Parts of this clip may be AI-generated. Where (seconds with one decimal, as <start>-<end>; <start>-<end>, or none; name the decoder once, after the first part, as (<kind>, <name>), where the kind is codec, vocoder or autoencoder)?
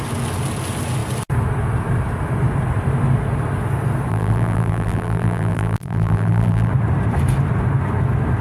4.1-6.7 (vocoder, BigVGAN v2)